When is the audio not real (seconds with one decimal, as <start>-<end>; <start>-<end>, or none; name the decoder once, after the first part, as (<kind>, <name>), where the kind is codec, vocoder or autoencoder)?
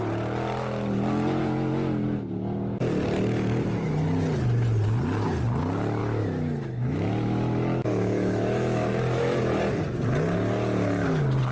6.0-9.4 (autoencoder, DAC-VAE)